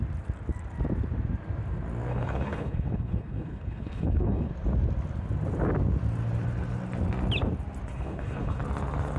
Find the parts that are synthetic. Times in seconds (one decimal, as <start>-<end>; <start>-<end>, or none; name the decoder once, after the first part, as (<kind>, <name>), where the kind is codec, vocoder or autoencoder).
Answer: 2.1-4.5 (codec, HILCodec); 7.9-8.6